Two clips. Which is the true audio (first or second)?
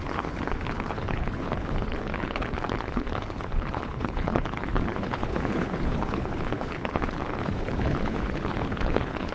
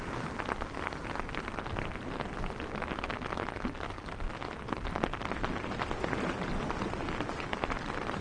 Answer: second